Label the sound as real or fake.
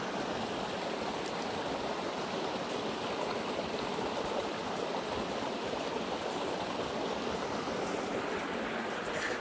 real